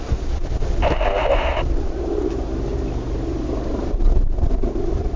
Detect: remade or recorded recorded